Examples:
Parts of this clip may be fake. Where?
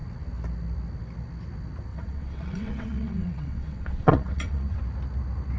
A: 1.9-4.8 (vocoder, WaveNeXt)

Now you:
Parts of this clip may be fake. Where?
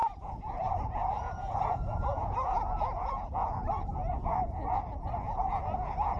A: 0.0-6.2 (vocoder, Vocos)